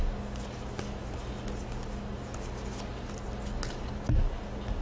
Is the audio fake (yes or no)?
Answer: no